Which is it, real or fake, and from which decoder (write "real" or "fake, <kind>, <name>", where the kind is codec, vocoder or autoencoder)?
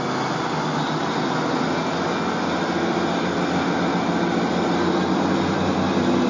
real